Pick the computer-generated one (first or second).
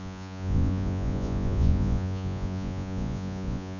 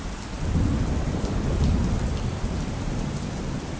first